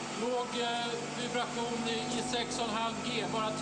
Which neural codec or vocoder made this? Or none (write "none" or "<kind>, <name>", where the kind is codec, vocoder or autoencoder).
none